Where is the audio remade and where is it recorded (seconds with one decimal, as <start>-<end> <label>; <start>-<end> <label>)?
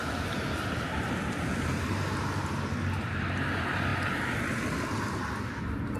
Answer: 0.0-2.3 remade; 2.3-6.0 recorded